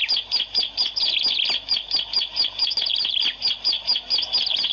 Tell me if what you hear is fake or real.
real